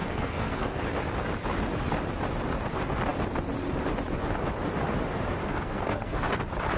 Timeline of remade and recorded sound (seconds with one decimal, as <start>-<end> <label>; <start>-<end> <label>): 0.0-0.8 remade; 0.8-5.4 recorded; 5.4-6.1 remade; 6.1-6.8 recorded